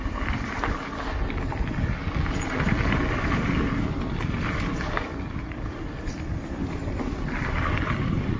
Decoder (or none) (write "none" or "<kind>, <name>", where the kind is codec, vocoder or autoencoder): none